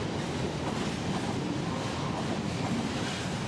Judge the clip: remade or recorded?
recorded